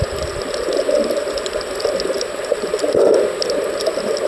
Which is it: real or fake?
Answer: real